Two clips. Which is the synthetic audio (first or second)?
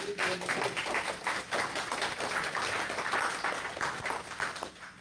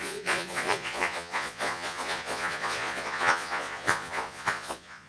second